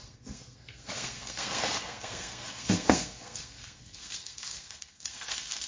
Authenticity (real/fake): fake